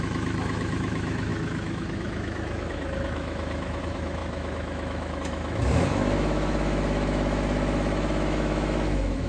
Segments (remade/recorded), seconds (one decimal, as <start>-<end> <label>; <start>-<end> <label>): 0.0-9.3 remade